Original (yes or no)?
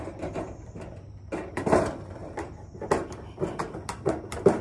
yes